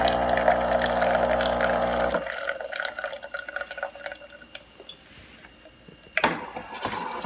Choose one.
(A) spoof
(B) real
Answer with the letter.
B